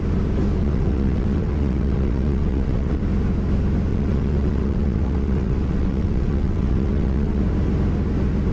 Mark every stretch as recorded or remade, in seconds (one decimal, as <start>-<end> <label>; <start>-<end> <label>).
0.0-0.6 recorded; 0.6-3.0 remade; 3.0-3.9 recorded; 3.9-7.4 remade; 7.4-8.5 recorded